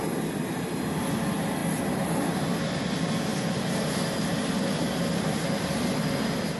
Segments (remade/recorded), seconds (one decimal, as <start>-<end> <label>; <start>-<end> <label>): 0.0-6.6 recorded